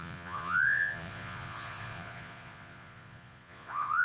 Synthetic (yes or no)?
yes